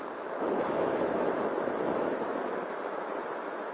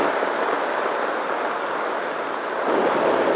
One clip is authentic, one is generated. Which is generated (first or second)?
first